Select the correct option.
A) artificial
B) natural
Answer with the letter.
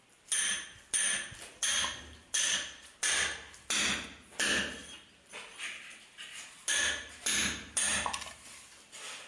B